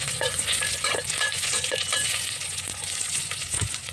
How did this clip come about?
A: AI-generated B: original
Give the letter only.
A